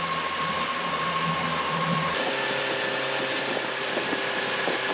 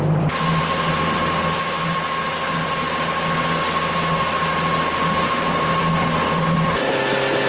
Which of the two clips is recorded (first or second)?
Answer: second